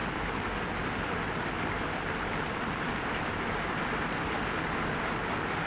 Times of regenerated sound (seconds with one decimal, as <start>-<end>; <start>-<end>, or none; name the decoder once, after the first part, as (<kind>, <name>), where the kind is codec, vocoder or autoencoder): none